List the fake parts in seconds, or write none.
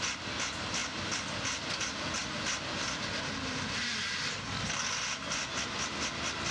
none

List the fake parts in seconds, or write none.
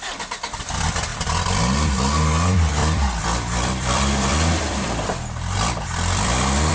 2.8-6.7 (vocoder, BigVGAN v2)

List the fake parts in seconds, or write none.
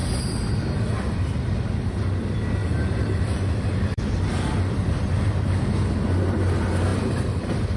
2.6-4.1 (vocoder, BigVGAN v2)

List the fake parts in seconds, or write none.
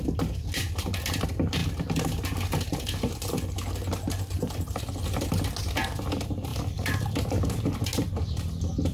6.5-7.1 (vocoder, BigVGAN v2)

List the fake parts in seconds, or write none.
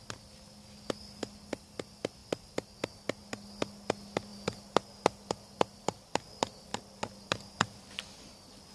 2.2-3.2 (vocoder, BigVGAN v2); 6.7-8.7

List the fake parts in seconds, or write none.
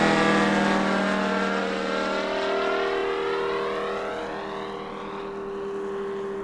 none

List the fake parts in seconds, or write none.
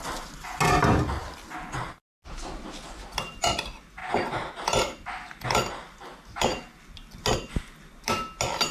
4.0-4.5 (vocoder, BigVGAN v2)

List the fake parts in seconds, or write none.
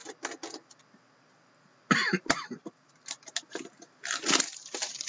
1.7-5.1 (vocoder, BigVGAN v2)